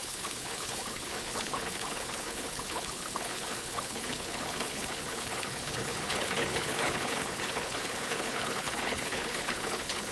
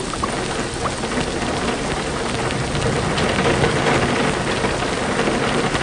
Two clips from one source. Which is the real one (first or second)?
second